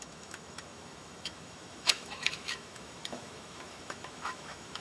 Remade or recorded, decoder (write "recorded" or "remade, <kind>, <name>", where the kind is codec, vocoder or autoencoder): remade, autoencoder, DAC-VAE